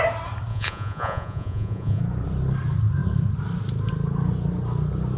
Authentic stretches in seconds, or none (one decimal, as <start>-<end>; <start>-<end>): 0.0-0.5; 2.0-5.2

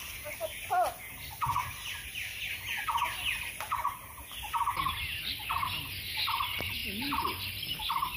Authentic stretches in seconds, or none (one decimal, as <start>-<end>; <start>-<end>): 0.0-1.6; 2.5-8.2

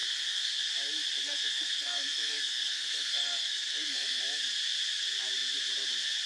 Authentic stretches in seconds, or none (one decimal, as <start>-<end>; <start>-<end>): 0.6-1.2; 4.2-6.3